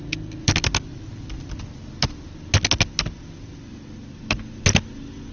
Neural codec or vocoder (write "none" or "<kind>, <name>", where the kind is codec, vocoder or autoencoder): none